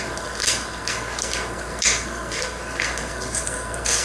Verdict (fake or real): fake